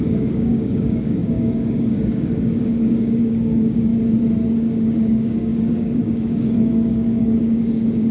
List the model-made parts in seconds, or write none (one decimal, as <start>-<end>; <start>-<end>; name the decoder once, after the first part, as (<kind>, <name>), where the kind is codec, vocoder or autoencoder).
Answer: 0.0-3.9 (codec, DAC); 4.5-8.1